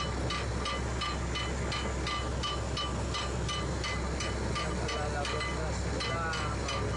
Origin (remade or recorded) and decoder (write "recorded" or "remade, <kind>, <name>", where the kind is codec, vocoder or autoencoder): recorded